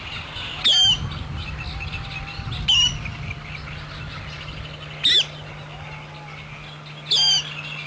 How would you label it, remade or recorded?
recorded